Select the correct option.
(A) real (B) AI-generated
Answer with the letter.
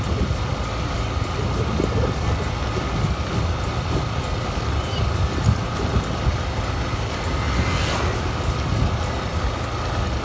A